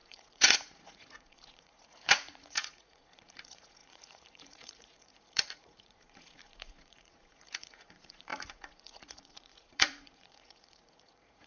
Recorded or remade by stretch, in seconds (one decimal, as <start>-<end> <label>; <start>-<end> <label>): 0.0-11.5 remade